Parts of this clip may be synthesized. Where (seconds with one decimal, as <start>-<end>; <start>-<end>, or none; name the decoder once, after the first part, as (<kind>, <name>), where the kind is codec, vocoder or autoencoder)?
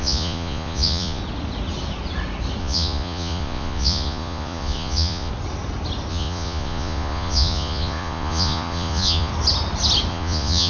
0.0-1.2 (vocoder, Vocos); 2.6-5.3; 6.1-9.3; 10.1-10.7